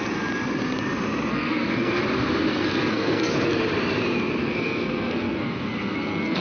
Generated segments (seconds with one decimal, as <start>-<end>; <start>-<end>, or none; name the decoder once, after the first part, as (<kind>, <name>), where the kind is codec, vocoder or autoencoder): 1.3-2.0 (codec, SNAC); 2.5-3.3; 4.4-6.4